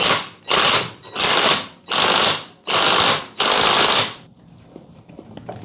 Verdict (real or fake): fake